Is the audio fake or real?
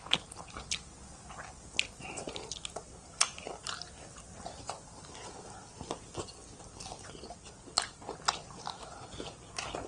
real